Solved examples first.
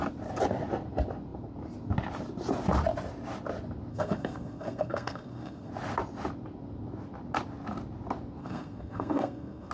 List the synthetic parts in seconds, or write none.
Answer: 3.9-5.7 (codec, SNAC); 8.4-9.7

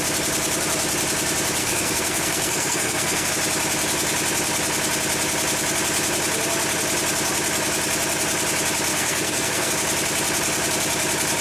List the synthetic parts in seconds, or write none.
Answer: 1.6-3.3 (codec, SNAC); 8.9-9.7

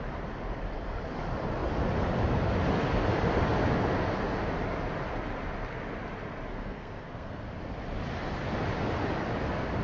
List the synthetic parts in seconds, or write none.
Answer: 6.5-7.4 (codec, SNAC)

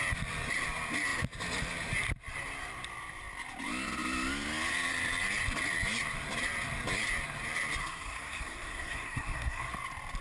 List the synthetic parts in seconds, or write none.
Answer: 7.8-9.7 (codec, SNAC)

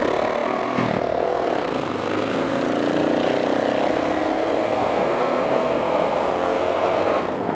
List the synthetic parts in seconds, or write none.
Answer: 0.0-2.6 (codec, SNAC); 3.9-7.5

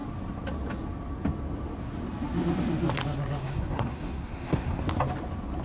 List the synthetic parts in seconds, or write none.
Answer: 3.4-4.8 (codec, SNAC)

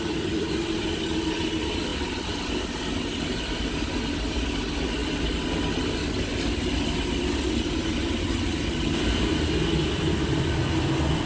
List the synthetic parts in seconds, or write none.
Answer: none